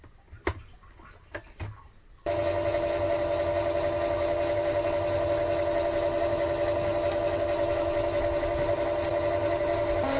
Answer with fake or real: real